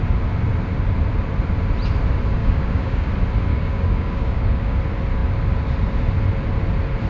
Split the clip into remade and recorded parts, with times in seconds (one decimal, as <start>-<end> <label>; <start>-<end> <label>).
0.0-2.4 recorded; 2.4-3.1 remade; 3.1-3.5 recorded; 3.5-4.8 remade; 4.8-7.1 recorded